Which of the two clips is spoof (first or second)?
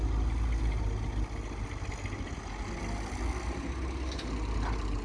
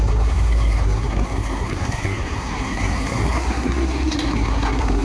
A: second